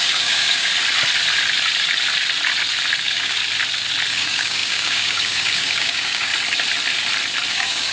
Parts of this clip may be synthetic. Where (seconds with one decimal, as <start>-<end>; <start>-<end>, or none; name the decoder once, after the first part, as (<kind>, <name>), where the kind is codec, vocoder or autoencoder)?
0.0-0.7 (codec, DAC); 3.0-3.4; 4.1-6.3; 7.5-7.9

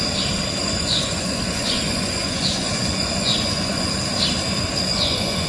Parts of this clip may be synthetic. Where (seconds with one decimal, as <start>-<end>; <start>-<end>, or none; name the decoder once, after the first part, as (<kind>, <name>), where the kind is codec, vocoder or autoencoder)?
0.6-3.9 (vocoder, Vocos); 4.9-5.5

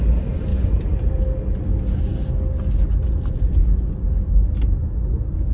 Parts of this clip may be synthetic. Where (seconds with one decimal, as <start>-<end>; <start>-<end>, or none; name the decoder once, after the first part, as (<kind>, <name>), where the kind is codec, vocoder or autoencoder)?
0.5-1.2 (vocoder, BigVGAN v2)

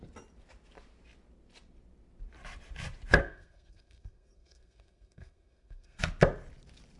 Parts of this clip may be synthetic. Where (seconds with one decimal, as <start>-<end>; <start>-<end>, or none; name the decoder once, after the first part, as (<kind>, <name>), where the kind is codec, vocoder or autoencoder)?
3.2-6.0 (codec, SNAC)

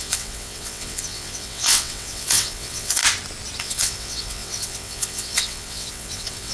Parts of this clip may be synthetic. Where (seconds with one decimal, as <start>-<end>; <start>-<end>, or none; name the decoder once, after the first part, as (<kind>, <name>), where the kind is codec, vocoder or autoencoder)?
0.0-3.0 (vocoder, WaveNeXt); 3.6-6.5

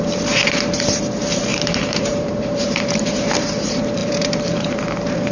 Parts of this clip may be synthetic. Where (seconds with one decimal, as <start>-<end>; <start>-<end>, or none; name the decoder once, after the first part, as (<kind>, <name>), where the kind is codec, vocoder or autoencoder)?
1.5-3.3 (vocoder, BigVGAN v2); 4.0-4.8